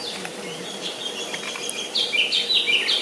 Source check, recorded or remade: recorded